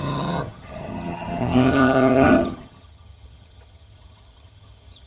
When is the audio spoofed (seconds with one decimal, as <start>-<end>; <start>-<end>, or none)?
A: 0.0-5.1